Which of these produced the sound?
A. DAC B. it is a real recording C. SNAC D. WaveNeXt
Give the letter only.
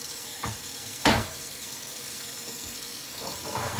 C